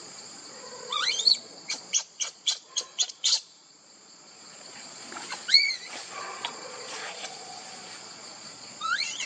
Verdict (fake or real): fake